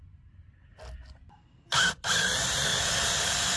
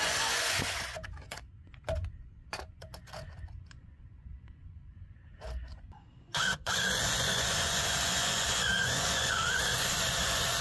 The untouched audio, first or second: first